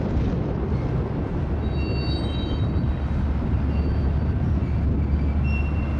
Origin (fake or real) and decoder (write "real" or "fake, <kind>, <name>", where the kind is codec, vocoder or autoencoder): real